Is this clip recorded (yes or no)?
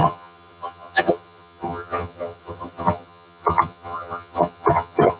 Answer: no